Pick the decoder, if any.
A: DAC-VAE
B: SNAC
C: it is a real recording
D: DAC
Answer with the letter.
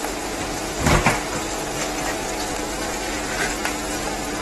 C